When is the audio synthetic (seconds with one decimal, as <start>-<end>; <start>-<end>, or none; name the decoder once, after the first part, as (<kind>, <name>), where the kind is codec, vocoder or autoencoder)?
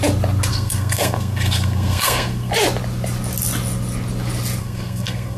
0.5-2.5 (codec, SNAC); 4.6-5.4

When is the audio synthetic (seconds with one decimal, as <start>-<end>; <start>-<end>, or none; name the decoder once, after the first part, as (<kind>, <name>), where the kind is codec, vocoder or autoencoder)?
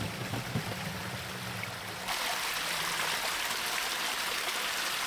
0.0-1.0 (vocoder, BigVGAN v2); 4.1-5.1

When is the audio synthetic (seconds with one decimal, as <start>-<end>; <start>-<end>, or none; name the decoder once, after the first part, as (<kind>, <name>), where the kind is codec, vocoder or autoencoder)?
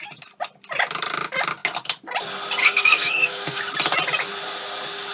2.6-3.6 (codec, SNAC)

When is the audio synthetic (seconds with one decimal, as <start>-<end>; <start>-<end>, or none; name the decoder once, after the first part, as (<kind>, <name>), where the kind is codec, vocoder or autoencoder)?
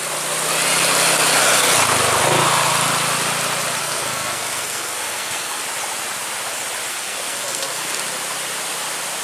3.8-5.6 (codec, SNAC); 6.9-8.0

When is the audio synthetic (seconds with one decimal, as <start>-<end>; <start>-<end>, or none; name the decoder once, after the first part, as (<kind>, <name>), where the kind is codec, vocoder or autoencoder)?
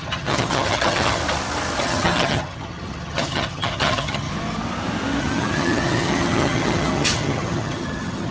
0.0-1.2 (vocoder, HiFi-GAN); 1.8-4.3; 5.2-8.3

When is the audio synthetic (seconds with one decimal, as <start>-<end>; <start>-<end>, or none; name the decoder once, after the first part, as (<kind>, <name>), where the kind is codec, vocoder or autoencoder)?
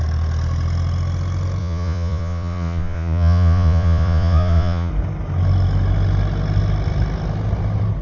1.6-4.9 (vocoder, Vocos)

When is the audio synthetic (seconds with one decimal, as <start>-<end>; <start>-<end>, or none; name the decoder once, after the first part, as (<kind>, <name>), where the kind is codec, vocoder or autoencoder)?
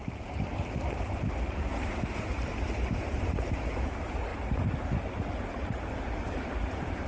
0.0-4.3 (vocoder, BigVGAN v2); 5.9-7.1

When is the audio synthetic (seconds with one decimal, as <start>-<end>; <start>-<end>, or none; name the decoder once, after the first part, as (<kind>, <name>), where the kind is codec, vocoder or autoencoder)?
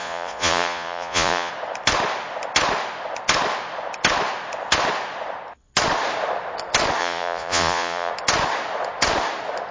0.0-1.5 (vocoder, Vocos); 7.0-8.1